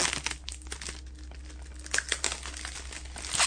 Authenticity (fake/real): real